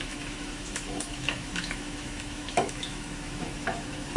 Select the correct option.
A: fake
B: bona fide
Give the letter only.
A